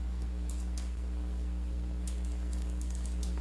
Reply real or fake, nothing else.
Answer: fake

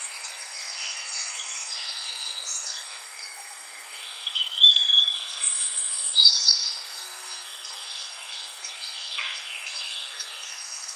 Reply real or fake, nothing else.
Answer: fake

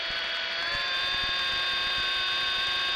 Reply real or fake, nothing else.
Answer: real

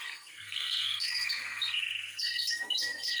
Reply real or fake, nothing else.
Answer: fake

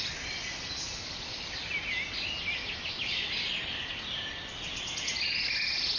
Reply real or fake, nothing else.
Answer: real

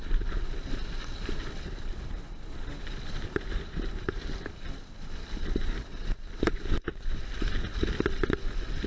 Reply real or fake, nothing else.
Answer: real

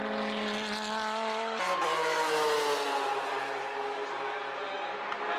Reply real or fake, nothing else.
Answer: real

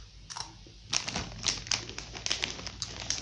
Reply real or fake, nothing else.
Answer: real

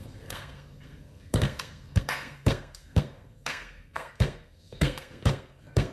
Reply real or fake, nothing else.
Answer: fake